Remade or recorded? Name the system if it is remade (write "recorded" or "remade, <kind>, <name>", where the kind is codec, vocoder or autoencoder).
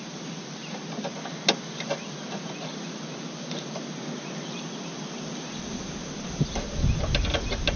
recorded